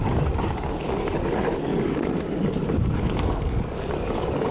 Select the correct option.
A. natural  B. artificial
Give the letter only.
B